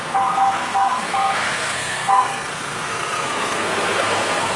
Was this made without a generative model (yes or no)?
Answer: no